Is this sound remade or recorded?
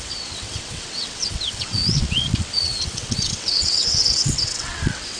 remade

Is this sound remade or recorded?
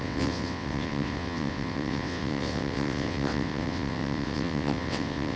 remade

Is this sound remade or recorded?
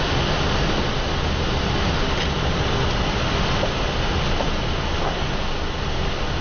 recorded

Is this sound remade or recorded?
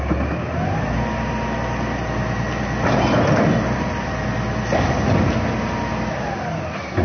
recorded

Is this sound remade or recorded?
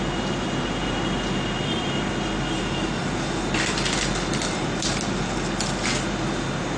recorded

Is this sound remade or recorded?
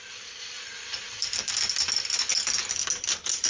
recorded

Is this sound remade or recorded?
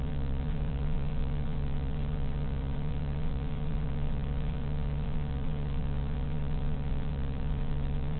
remade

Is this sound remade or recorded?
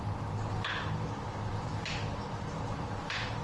recorded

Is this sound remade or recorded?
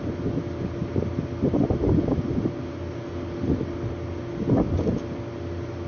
recorded